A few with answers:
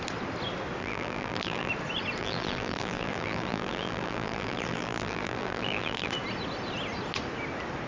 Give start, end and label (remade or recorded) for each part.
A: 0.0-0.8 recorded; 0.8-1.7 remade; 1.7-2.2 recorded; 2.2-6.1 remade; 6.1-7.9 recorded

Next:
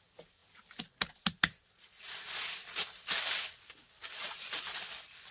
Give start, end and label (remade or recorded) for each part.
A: 0.0-5.3 recorded

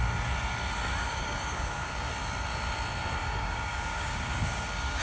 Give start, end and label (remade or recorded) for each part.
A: 0.0-1.0 recorded; 1.0-2.1 remade; 2.1-3.2 recorded; 3.2-5.0 remade

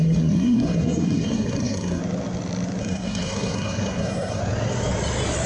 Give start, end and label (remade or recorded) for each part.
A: 0.0-2.0 remade; 2.0-2.8 recorded; 2.8-4.4 remade; 4.4-5.5 recorded

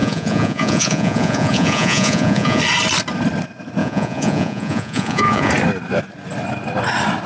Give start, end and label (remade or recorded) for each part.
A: 0.0-2.6 remade; 2.6-3.8 recorded; 3.8-5.5 remade; 5.5-7.3 recorded

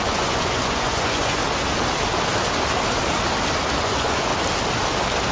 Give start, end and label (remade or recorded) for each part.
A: 0.0-1.4 remade; 1.4-3.8 recorded; 3.8-4.3 remade; 4.3-5.3 recorded